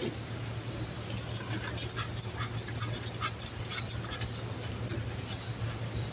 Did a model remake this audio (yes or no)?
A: no